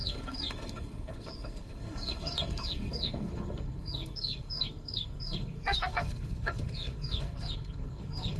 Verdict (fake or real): fake